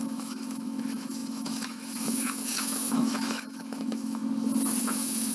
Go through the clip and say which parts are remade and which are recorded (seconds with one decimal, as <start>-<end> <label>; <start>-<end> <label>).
0.0-4.2 remade; 4.2-4.8 recorded; 4.8-5.3 remade